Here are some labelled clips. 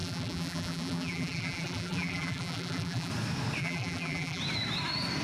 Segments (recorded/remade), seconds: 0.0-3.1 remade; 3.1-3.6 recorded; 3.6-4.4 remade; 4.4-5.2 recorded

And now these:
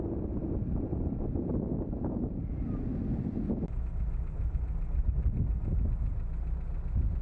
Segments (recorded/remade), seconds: 0.0-7.2 recorded

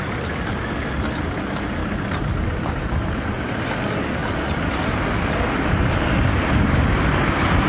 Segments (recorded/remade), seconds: 0.0-1.8 recorded; 1.8-3.4 remade; 3.4-7.7 recorded

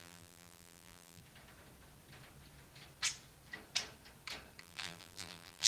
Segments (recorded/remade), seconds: 0.0-1.2 remade; 1.2-4.6 recorded; 4.6-5.7 remade

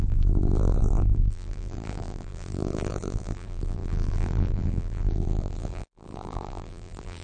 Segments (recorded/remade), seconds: 0.0-7.2 remade

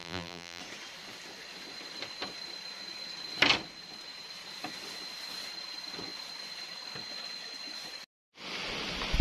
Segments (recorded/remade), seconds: 0.0-0.6 remade; 0.6-9.2 recorded